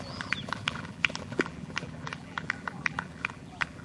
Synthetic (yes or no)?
yes